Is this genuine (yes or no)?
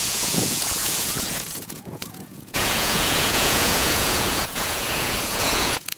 no